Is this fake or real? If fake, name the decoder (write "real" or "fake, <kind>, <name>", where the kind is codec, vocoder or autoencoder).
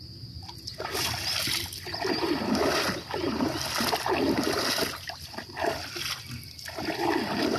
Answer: real